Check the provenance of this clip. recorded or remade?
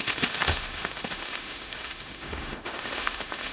remade